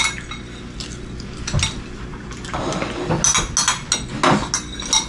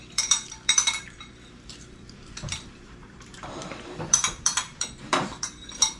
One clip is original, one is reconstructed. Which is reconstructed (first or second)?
second